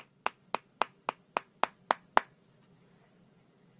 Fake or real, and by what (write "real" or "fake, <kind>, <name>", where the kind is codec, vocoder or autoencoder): real